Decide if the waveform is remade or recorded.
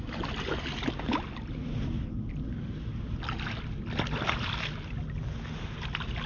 recorded